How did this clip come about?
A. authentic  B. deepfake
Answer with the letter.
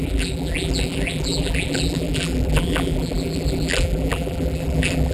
B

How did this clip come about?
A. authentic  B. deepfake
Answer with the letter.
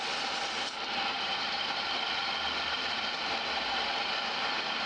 A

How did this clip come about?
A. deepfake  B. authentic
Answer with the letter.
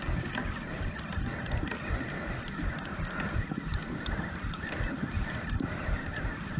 B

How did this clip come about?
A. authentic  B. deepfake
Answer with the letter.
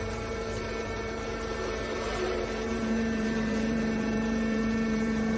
B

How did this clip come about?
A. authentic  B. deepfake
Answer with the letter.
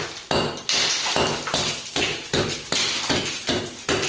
A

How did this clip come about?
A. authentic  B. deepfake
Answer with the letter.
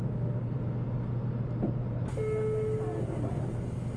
A